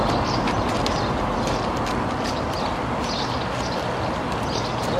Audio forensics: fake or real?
real